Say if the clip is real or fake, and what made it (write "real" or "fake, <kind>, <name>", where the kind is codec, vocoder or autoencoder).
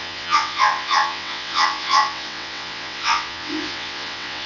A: fake, vocoder, WaveNeXt